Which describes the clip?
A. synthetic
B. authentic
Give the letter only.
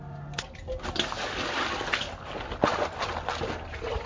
B